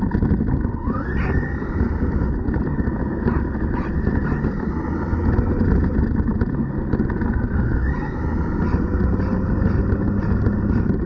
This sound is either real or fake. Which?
real